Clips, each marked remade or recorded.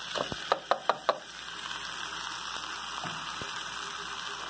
recorded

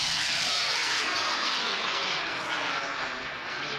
remade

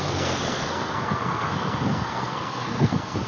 remade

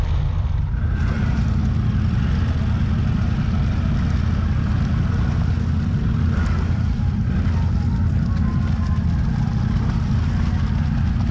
recorded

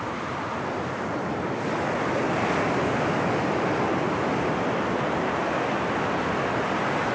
recorded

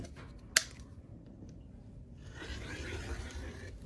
recorded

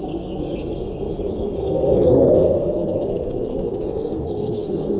remade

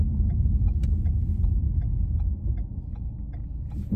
recorded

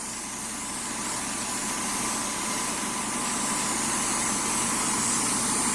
recorded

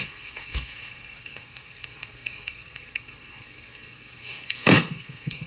remade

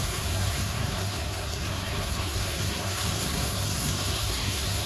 remade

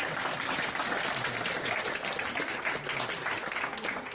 recorded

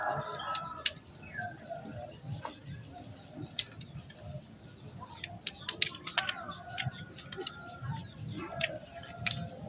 recorded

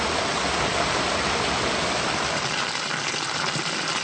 recorded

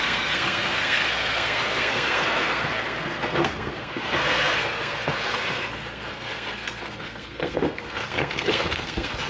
remade